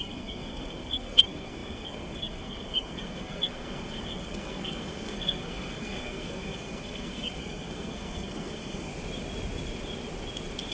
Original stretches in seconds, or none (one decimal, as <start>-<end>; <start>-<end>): 8.9-10.7